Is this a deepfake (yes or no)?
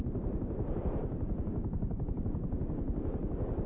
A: no